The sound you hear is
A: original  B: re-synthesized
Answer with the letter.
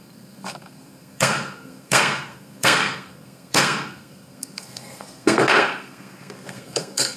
B